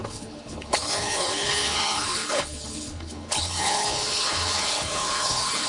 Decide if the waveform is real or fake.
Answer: fake